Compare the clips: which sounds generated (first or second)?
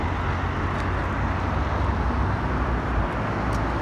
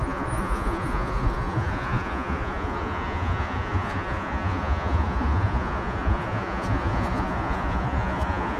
second